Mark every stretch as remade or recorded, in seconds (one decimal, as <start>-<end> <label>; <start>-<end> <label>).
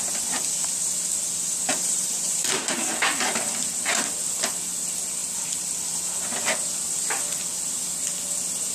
0.0-1.7 recorded; 1.7-2.9 remade; 2.9-8.7 recorded